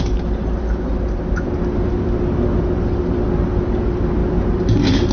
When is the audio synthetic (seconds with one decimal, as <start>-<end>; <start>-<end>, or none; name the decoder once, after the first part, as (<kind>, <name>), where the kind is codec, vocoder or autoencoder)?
none